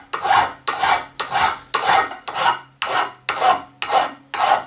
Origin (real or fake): real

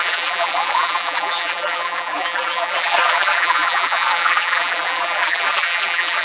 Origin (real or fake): fake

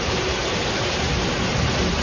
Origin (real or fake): fake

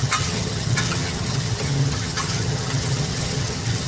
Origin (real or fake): fake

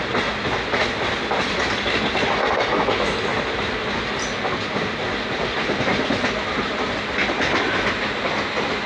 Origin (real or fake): real